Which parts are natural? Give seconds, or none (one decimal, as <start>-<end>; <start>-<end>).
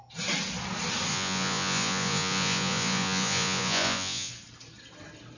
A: 0.0-1.1; 4.3-5.4